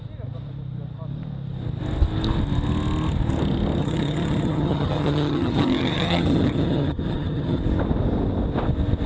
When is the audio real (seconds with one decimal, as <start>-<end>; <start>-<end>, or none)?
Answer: 0.0-3.8; 7.6-9.1